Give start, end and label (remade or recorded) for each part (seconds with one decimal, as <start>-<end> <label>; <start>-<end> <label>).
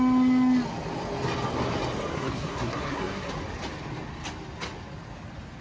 0.0-2.1 recorded; 2.1-3.3 remade; 3.3-5.6 recorded